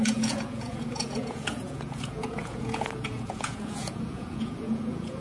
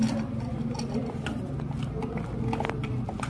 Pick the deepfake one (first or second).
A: first